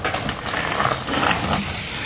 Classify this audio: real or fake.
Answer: real